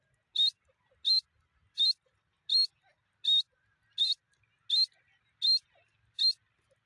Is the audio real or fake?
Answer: real